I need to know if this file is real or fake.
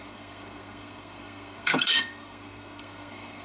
fake